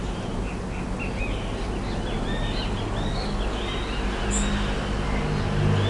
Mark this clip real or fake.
real